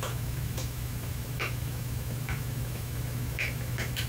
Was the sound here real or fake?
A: fake